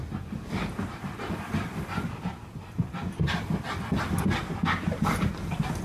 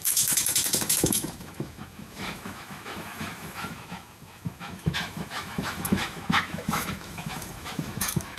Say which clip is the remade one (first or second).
second